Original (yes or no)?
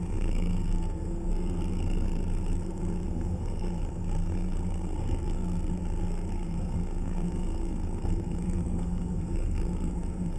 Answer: no